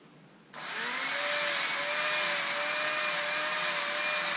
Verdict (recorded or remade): recorded